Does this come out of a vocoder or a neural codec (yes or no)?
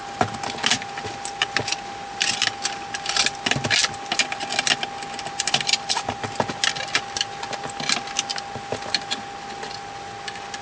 no